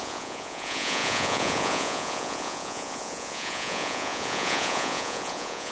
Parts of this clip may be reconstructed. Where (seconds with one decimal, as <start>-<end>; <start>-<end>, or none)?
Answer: 0.0-5.7